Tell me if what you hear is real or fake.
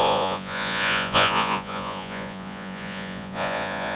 fake